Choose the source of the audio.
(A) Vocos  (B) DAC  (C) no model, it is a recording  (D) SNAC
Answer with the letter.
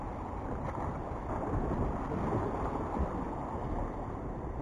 C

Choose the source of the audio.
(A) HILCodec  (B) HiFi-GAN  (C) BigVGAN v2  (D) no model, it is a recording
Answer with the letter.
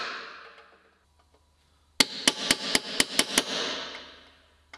D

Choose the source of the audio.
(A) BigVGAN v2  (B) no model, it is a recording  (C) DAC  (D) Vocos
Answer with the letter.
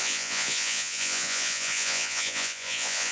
D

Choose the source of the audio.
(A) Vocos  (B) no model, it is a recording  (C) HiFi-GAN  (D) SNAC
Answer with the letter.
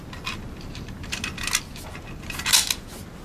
B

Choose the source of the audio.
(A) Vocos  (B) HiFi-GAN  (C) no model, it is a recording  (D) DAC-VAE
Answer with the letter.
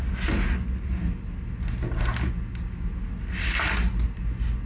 C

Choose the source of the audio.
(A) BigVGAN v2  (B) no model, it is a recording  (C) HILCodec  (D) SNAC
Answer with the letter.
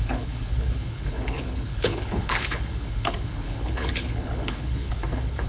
C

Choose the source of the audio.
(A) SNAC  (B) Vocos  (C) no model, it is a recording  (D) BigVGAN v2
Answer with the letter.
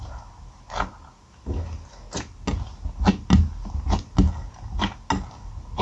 C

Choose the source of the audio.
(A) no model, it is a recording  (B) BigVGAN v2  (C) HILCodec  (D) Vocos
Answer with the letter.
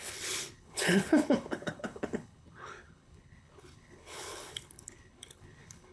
C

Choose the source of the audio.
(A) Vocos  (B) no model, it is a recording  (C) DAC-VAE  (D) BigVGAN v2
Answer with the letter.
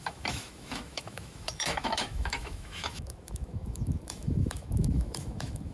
C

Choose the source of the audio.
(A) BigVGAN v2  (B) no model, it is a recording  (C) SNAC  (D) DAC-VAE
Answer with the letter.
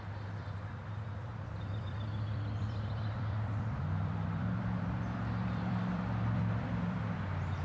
A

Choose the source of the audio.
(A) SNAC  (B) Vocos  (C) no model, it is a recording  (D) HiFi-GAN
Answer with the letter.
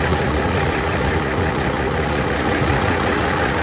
B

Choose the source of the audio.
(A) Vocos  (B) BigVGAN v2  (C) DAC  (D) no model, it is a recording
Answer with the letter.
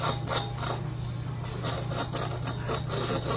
D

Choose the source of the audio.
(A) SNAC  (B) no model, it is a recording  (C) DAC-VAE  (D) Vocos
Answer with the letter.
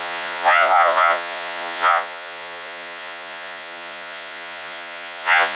D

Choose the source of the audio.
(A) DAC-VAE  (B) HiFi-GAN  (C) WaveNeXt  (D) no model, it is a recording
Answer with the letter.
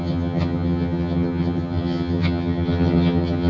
B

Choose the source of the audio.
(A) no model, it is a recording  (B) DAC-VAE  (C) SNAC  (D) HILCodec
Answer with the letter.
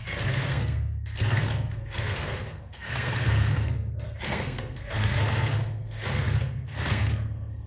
C